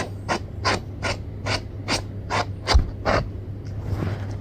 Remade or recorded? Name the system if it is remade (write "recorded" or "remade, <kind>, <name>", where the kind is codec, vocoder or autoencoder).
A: recorded